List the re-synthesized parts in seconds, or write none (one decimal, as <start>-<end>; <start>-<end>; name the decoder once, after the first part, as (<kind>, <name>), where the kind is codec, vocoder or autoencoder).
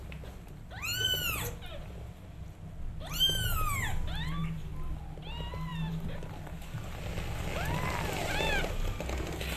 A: none